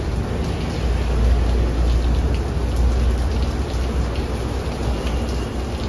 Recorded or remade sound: recorded